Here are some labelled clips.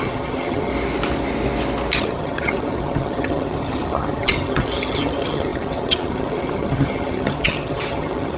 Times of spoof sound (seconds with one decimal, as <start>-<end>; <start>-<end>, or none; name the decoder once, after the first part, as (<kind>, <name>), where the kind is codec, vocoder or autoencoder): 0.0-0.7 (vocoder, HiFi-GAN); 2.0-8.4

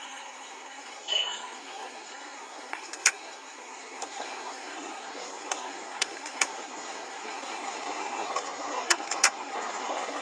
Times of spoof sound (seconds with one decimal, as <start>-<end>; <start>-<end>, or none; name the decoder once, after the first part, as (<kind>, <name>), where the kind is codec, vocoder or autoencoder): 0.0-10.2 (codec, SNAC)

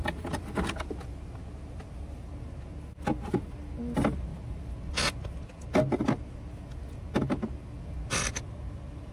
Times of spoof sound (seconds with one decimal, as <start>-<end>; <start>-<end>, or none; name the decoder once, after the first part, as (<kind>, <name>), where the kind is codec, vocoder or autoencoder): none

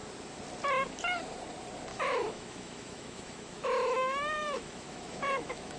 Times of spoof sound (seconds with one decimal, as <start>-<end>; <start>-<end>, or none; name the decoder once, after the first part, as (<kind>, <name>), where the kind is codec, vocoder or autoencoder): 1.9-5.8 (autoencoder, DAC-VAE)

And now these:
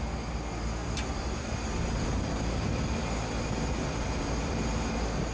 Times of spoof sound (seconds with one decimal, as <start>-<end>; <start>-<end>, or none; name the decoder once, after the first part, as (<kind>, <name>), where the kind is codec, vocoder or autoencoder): none

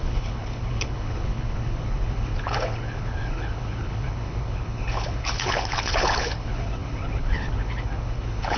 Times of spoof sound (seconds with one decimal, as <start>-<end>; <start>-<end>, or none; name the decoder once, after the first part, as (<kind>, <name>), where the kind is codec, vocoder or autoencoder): 0.0-8.6 (codec, HILCodec)